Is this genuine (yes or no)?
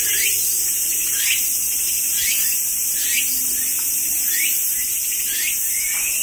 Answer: yes